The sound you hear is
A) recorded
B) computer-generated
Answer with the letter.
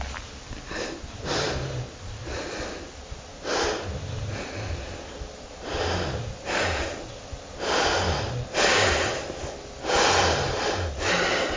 A